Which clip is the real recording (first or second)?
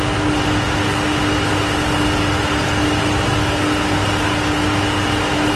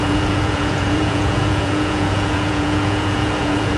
first